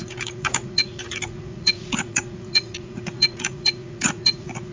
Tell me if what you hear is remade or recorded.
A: remade